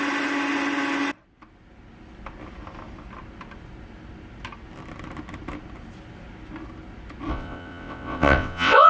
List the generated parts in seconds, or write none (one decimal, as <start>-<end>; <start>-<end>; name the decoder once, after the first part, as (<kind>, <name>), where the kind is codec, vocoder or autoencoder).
7.3-8.9 (vocoder, WaveNeXt)